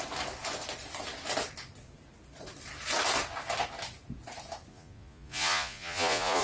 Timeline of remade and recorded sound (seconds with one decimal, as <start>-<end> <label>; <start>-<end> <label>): 0.0-4.7 recorded; 4.7-6.4 remade